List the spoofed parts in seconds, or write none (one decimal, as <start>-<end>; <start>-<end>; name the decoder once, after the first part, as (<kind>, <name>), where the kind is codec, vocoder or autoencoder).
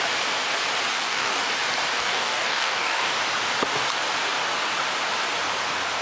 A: 0.9-1.4 (codec, DAC); 2.0-3.1